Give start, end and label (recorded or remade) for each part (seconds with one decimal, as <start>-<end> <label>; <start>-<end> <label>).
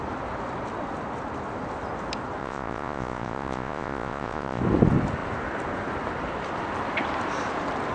0.0-2.4 recorded; 2.4-4.6 remade; 4.6-7.9 recorded